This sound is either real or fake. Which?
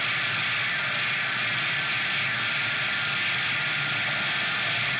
real